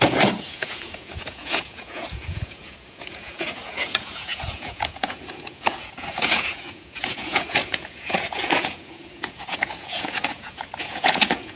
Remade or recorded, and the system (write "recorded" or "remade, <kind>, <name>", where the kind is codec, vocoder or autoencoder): remade, vocoder, Vocos